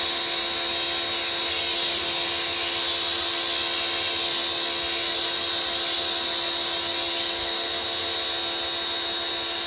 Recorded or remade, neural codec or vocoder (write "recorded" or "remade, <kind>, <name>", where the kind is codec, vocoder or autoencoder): recorded